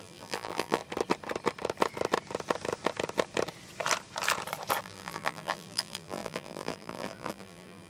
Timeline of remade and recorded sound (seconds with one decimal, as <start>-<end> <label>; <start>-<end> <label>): 0.0-0.8 remade; 0.8-4.8 recorded; 4.8-7.9 remade